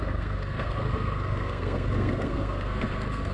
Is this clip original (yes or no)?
no